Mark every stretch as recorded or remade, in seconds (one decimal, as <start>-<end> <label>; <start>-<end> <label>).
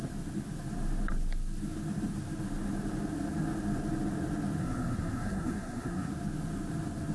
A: 0.0-4.6 recorded; 4.6-6.1 remade; 6.1-7.1 recorded